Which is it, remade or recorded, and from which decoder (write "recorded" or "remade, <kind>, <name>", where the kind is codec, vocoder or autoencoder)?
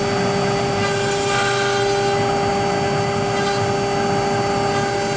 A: recorded